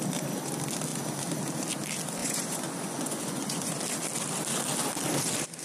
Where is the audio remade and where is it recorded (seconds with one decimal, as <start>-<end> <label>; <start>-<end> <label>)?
0.0-2.2 recorded; 2.2-3.8 remade; 3.8-5.6 recorded

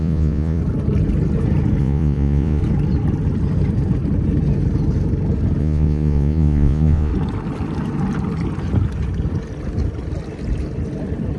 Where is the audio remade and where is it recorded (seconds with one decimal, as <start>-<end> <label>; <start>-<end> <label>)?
0.0-0.6 remade; 0.6-1.8 recorded; 1.8-2.6 remade; 2.6-5.6 recorded; 5.6-7.1 remade; 7.1-11.4 recorded